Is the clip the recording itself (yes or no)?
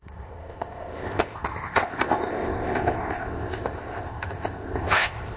no